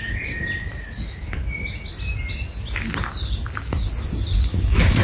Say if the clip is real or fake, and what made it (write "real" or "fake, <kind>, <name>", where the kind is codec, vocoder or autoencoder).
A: real